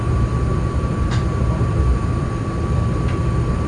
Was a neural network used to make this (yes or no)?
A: yes